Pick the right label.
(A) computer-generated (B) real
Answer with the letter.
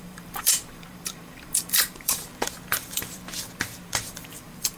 A